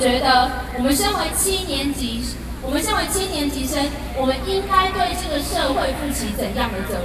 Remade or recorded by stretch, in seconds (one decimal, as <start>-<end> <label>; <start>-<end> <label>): 0.0-5.1 recorded; 5.1-6.3 remade; 6.3-7.0 recorded